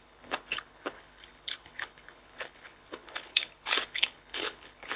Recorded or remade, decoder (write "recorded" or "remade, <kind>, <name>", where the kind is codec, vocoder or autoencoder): remade, codec, HILCodec